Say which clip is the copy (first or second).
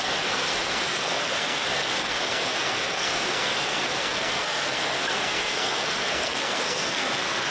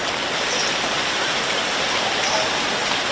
first